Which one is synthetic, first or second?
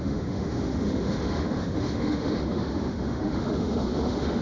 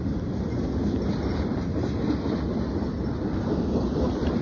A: first